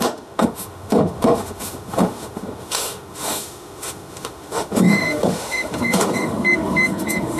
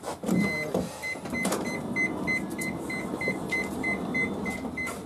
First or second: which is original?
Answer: second